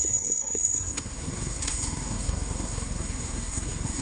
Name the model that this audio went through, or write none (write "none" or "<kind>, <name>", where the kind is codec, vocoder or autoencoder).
codec, SNAC